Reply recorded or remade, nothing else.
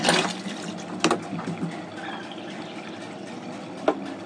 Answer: recorded